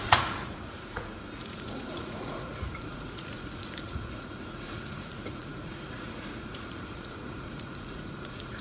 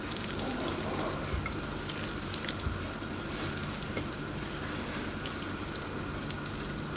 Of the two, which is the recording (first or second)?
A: second